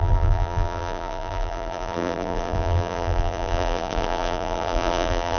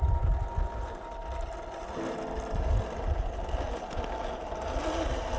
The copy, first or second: first